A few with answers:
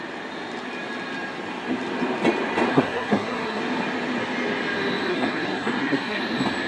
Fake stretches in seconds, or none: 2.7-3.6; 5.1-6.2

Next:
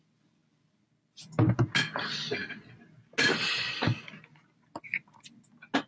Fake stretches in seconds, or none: none